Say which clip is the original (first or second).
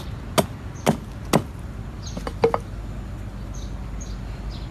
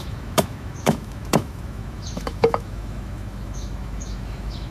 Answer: first